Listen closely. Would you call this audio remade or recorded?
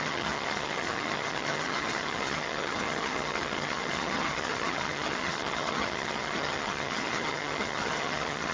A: remade